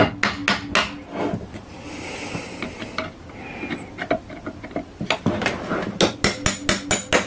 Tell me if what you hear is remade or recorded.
recorded